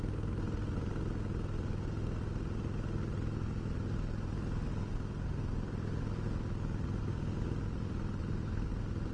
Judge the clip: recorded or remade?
recorded